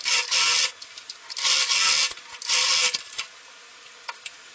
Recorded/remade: recorded